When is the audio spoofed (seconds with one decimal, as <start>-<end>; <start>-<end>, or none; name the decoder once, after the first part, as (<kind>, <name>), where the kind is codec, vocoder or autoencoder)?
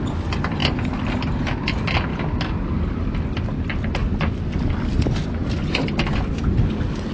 none